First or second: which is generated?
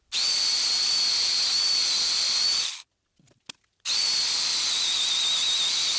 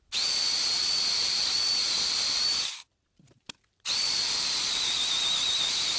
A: second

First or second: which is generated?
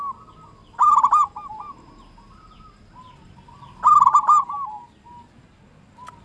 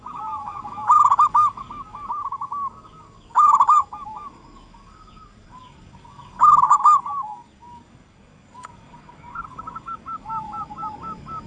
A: second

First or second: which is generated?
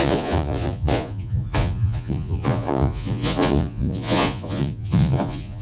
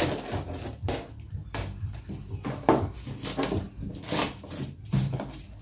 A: first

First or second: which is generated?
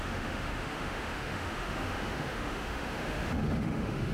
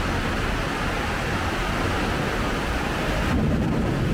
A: first